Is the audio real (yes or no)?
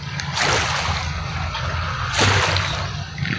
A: yes